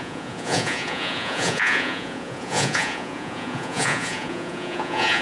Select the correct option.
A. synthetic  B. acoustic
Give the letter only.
A